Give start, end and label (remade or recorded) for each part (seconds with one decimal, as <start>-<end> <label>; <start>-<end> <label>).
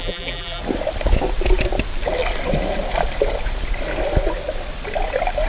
0.0-0.6 remade; 0.6-5.5 recorded